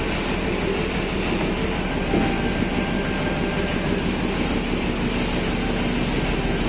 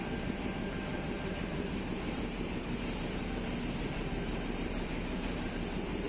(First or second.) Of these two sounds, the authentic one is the first